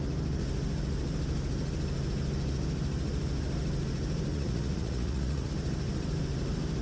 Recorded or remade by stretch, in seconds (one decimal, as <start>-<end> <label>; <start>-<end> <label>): 0.0-4.3 recorded; 4.3-5.5 remade; 5.5-6.8 recorded